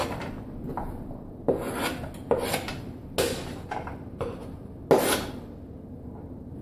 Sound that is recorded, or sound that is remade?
recorded